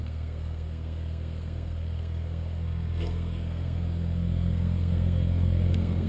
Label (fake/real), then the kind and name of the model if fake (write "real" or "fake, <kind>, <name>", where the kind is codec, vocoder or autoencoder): fake, codec, SNAC